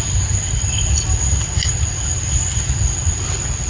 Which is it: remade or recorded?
recorded